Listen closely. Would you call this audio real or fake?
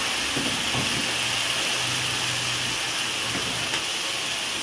real